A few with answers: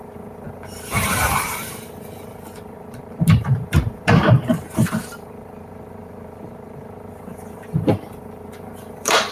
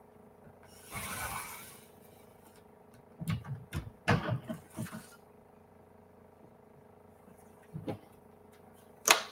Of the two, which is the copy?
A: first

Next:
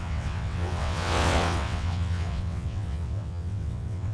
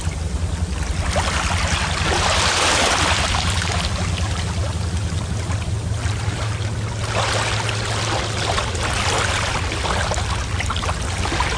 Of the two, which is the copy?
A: first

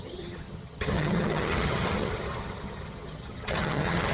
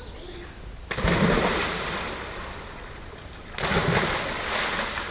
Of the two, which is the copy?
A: first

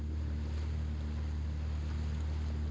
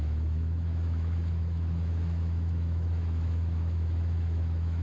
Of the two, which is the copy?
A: second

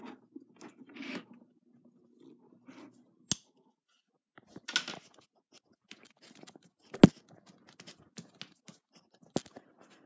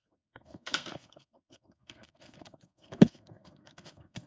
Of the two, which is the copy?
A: second